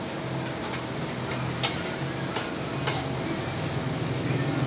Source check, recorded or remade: recorded